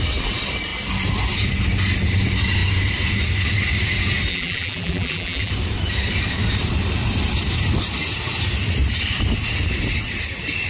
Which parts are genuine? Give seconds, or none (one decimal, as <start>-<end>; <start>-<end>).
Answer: 0.0-4.3; 5.5-10.7